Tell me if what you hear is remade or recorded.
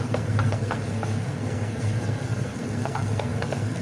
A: remade